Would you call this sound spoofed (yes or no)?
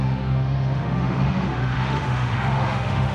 yes